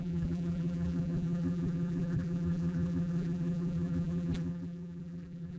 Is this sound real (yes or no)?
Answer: no